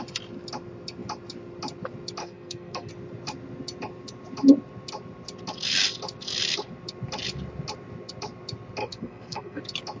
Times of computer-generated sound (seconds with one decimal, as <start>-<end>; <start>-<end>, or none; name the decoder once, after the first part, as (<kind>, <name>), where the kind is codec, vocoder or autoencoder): 2.2-2.9 (codec, SNAC); 8.8-9.6